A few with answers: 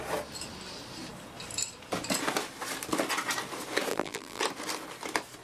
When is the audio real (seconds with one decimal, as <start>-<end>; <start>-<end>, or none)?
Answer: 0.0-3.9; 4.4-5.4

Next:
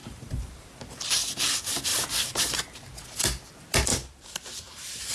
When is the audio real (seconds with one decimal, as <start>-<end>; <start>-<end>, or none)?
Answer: 0.8-3.9

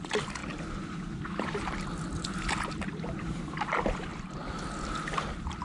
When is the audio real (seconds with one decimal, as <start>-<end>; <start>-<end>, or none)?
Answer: 0.0-5.6